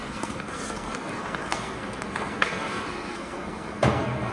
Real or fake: fake